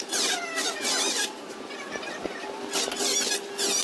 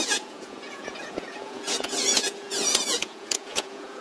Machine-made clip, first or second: second